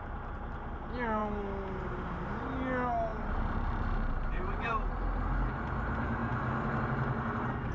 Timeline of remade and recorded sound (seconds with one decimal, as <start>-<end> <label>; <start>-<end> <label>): 0.0-3.1 recorded; 3.1-4.9 remade; 4.9-7.7 recorded